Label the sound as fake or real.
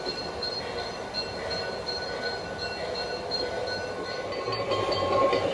real